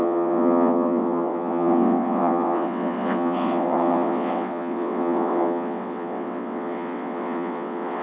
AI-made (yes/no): yes